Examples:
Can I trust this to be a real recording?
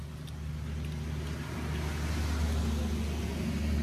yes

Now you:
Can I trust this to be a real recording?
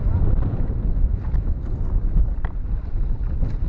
yes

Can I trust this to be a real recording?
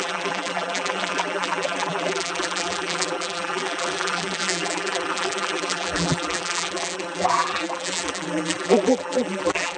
no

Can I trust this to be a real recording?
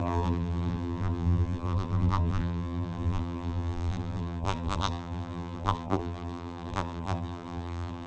no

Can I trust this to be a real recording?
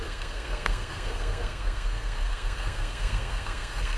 no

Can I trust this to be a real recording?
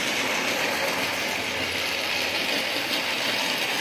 yes